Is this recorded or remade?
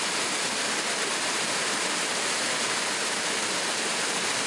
recorded